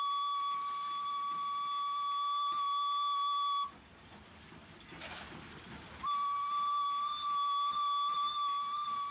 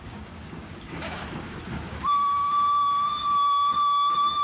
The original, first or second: first